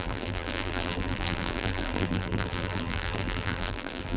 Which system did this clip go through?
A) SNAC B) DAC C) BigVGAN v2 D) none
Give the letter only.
C